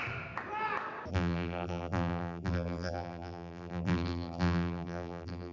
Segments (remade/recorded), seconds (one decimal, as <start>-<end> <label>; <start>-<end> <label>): 0.0-1.1 recorded; 1.1-5.5 remade